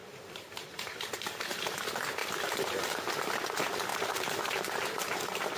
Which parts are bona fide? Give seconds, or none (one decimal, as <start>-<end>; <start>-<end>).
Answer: 1.3-2.2; 3.1-3.9